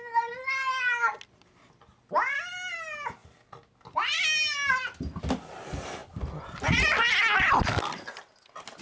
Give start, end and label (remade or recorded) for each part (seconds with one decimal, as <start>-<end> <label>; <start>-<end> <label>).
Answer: 0.0-8.8 recorded